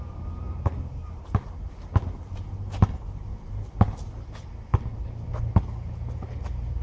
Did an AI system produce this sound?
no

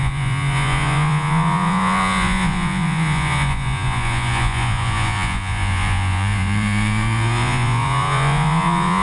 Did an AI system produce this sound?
yes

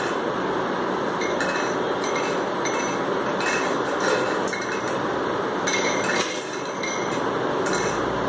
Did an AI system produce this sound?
no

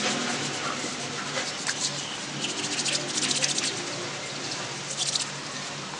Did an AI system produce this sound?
no